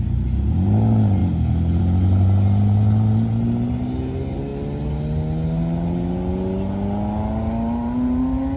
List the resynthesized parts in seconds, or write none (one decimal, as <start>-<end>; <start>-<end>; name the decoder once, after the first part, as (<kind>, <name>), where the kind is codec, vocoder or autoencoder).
none